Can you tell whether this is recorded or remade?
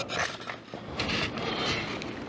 recorded